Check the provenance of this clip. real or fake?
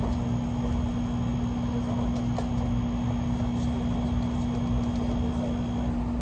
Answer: real